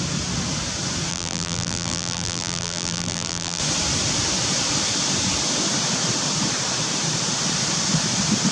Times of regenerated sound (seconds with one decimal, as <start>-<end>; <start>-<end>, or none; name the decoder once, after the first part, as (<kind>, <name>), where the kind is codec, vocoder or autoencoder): 1.1-3.6 (vocoder, BigVGAN v2)

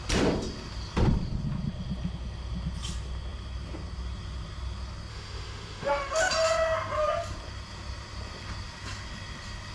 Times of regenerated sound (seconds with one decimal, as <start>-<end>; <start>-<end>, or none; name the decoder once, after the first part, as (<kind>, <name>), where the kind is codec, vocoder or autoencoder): 5.1-6.3 (autoencoder, DAC-VAE)